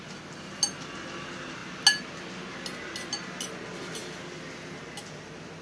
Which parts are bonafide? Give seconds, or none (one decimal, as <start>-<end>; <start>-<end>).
0.0-5.6